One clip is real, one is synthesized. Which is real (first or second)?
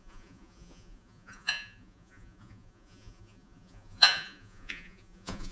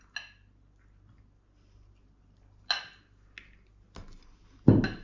second